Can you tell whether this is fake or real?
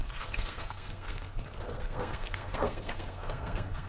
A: fake